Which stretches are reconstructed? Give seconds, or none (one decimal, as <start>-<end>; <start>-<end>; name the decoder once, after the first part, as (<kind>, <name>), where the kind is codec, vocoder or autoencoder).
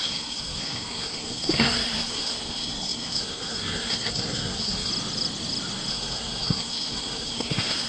0.0-4.9 (codec, SNAC); 5.9-7.9